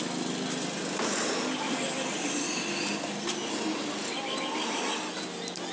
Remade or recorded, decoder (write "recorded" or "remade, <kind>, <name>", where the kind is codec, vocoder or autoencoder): recorded